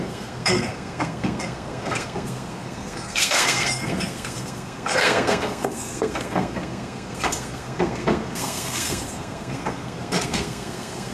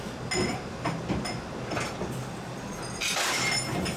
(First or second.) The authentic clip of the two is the second